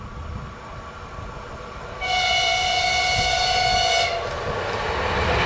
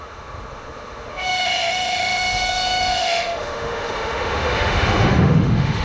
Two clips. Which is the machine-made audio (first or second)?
second